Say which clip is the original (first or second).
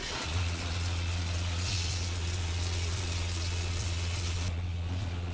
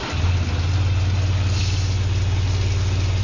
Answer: second